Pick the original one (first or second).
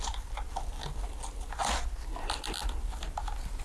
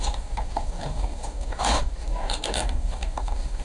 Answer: first